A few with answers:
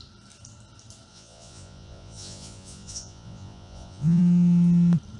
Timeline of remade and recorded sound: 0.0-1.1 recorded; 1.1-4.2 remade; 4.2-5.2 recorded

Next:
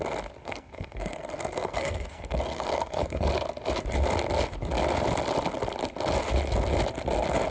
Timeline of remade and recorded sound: 0.0-0.4 recorded; 0.4-3.3 remade; 3.3-7.5 recorded

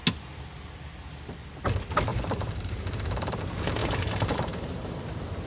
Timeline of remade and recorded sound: 0.0-2.1 recorded; 2.1-3.4 remade; 3.4-3.8 recorded; 3.8-5.0 remade; 5.0-5.5 recorded

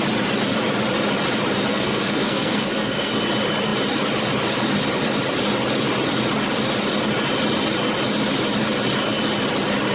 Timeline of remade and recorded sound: 0.0-1.7 recorded; 1.7-3.1 remade; 3.1-9.9 recorded

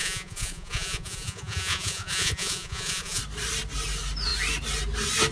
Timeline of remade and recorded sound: 0.0-3.2 remade; 3.2-5.3 recorded

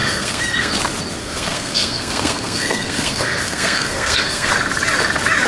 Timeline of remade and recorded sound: 0.0-0.7 remade; 0.7-1.2 recorded; 1.2-4.5 remade; 4.5-5.5 recorded

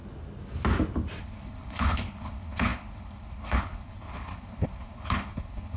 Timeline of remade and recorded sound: 0.0-1.2 recorded; 1.2-5.8 remade